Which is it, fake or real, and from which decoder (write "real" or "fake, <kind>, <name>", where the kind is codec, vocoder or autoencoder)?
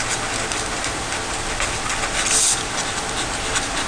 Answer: real